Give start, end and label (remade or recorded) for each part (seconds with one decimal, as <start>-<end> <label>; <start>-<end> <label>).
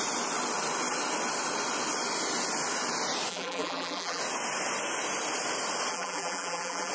0.0-3.3 recorded; 3.3-4.2 remade; 4.2-5.9 recorded; 5.9-6.9 remade